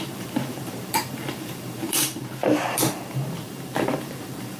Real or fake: fake